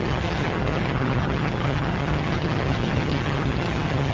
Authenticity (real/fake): fake